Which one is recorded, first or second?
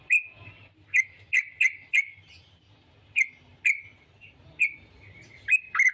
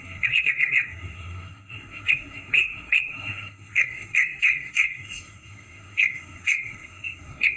first